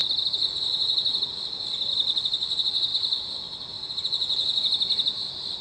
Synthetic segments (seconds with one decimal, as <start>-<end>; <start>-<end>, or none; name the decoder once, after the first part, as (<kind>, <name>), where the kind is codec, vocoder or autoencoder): 0.0-0.6 (vocoder, BigVGAN v2)